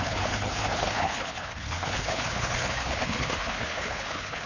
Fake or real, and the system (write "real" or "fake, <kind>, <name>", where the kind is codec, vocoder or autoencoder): fake, codec, HILCodec